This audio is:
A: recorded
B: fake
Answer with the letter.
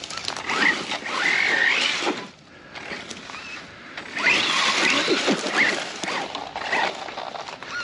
A